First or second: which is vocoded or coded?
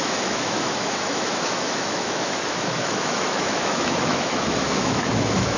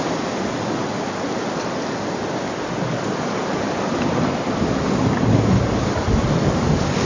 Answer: first